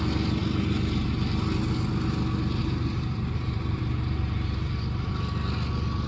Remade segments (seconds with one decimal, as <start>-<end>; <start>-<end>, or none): 2.6-5.1